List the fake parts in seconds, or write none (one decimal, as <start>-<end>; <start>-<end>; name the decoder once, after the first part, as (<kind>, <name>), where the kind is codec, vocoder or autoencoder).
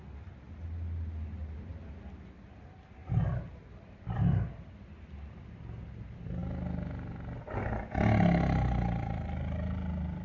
none